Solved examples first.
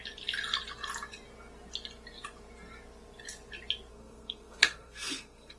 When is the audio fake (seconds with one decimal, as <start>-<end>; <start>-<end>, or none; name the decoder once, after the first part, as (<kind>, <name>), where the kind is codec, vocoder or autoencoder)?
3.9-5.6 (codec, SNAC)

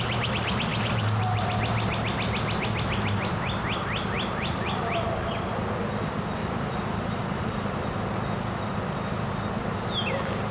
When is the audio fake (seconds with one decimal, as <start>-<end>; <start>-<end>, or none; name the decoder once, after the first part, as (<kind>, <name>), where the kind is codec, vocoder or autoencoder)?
0.7-1.5 (vocoder, BigVGAN v2); 6.4-7.8

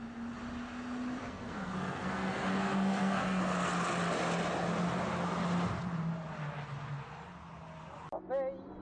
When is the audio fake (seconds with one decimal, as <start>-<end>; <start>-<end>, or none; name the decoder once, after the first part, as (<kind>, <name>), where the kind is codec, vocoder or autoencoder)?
1.2-3.7 (codec, SNAC)

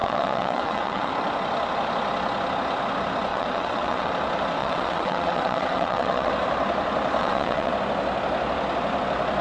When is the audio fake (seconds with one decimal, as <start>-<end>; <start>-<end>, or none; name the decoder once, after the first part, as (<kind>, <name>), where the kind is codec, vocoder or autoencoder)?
0.0-1.1 (vocoder, WaveNeXt); 3.3-4.1; 4.6-6.3; 7.2-7.7